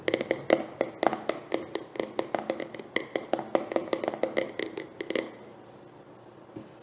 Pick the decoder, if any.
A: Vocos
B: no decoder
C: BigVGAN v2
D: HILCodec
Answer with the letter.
B